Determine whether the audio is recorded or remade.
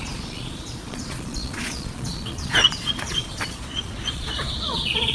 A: remade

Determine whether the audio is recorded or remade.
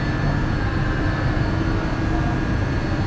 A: recorded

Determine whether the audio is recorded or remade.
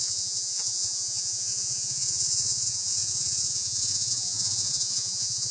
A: remade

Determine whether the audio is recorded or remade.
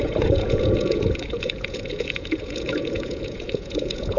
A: remade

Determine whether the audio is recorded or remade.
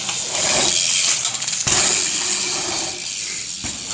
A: recorded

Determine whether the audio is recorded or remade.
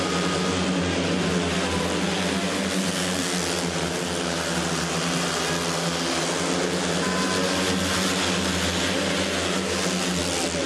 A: recorded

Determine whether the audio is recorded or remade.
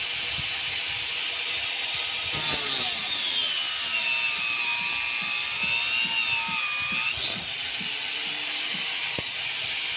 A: recorded